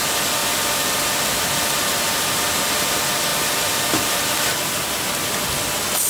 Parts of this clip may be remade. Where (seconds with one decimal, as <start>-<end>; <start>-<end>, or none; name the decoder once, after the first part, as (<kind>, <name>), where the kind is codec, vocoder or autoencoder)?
0.4-1.8 (vocoder, BigVGAN v2); 3.3-4.5